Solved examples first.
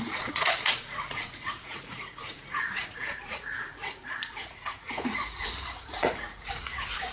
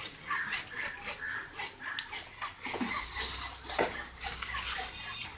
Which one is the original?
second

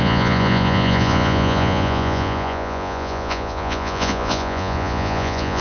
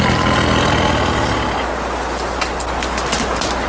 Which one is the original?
second